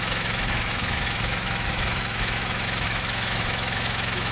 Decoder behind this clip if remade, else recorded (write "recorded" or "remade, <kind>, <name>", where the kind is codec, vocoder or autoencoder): remade, autoencoder, DAC-VAE